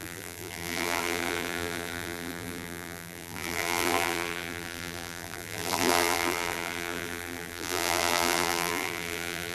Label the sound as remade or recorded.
remade